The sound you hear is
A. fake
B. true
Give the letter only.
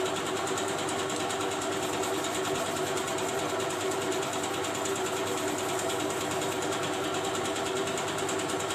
B